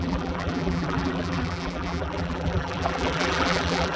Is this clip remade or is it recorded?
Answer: remade